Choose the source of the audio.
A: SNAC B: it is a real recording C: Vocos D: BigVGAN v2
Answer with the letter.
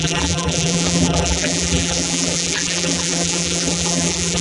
D